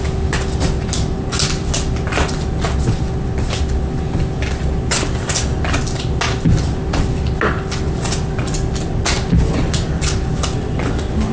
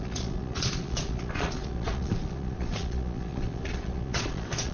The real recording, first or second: first